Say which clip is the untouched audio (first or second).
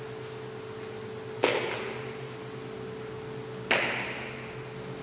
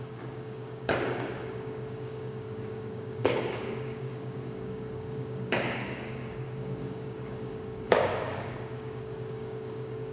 first